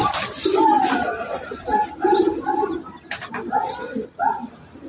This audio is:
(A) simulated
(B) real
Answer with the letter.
B